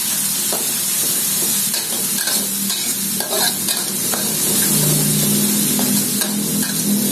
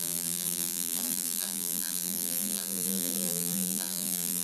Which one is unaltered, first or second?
first